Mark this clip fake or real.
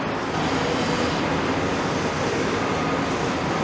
real